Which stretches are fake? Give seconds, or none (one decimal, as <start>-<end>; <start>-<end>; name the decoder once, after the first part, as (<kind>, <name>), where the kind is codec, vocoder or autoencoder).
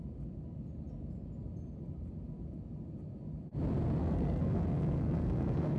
4.0-5.8 (codec, SNAC)